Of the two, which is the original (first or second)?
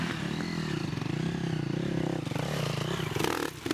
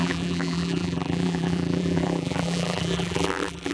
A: first